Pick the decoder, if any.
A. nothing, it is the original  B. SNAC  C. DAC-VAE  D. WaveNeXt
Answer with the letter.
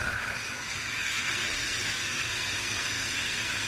B